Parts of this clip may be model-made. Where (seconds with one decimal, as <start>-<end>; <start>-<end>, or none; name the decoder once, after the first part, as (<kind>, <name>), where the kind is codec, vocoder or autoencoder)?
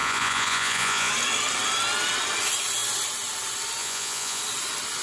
0.0-1.1 (vocoder, Vocos); 3.8-4.4